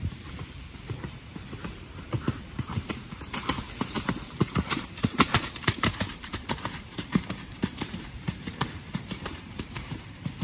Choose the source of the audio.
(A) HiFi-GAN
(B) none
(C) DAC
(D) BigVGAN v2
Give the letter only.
D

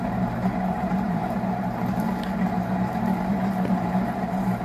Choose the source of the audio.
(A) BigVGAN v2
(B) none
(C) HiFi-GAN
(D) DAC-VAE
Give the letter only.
A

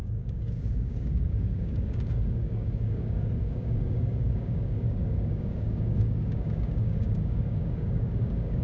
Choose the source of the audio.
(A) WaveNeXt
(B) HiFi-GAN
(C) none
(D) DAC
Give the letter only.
D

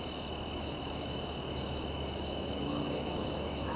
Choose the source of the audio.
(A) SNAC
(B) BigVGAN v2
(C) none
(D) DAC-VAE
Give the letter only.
D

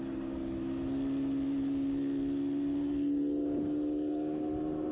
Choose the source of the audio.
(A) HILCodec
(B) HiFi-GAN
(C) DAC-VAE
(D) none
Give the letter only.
D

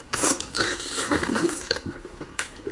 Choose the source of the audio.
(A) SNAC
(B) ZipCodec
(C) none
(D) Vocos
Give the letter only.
A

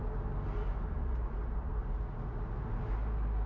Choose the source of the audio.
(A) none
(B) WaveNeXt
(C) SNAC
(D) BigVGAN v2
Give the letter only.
A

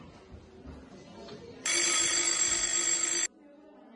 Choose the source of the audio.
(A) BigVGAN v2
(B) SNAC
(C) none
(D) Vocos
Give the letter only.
C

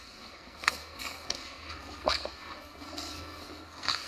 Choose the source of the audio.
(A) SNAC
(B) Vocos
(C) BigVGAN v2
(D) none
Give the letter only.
A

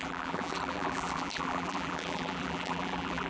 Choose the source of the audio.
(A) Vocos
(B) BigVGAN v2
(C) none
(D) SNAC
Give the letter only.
B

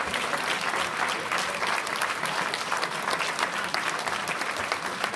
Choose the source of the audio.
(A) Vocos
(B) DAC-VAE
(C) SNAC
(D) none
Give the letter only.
D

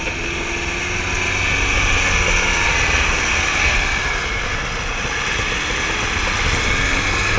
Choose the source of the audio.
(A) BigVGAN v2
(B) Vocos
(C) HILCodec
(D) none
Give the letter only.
D